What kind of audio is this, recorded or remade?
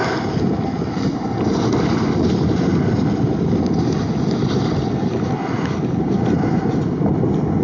recorded